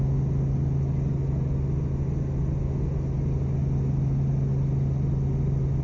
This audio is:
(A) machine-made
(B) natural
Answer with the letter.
B